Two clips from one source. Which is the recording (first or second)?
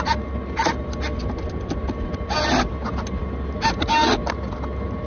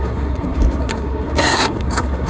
first